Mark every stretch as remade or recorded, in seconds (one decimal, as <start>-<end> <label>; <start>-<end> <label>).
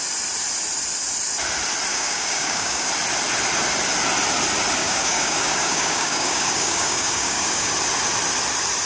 0.0-1.9 recorded; 1.9-2.9 remade; 2.9-4.8 recorded; 4.8-7.7 remade; 7.7-8.9 recorded